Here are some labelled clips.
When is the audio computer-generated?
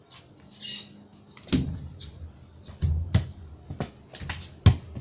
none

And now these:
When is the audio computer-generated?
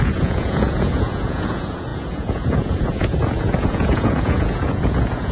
0.0-5.3 (vocoder, Vocos)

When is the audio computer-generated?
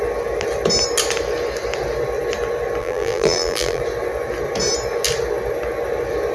2.8-3.8 (vocoder, BigVGAN v2)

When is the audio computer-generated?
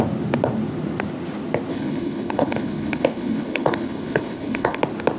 1.7-4.8 (codec, HILCodec)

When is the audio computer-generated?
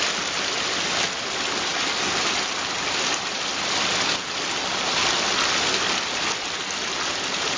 none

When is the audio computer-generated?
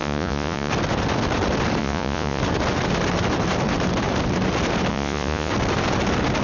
0.0-0.7 (vocoder, Vocos); 1.8-2.4; 4.9-5.5